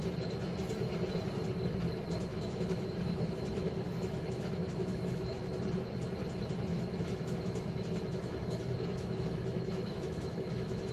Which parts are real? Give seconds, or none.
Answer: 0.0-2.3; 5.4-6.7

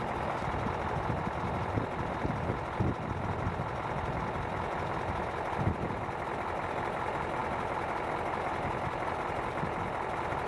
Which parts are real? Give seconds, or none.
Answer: 0.0-10.5

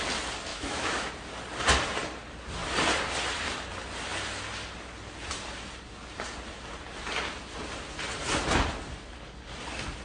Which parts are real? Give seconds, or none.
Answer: 0.0-0.5; 1.1-10.0